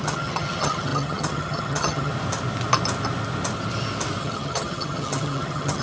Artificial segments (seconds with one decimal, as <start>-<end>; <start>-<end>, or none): 0.0-2.1; 4.2-5.8

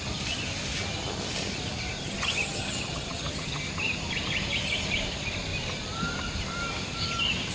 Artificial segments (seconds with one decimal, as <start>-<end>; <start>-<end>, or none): 2.0-3.7

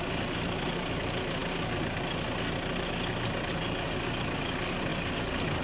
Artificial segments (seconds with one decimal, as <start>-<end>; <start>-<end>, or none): none

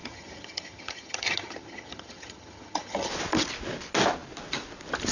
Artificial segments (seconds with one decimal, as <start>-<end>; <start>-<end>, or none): 0.0-3.1

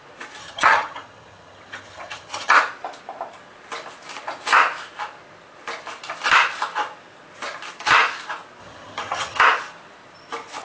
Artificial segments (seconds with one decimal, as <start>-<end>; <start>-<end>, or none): 0.4-2.5; 8.6-9.4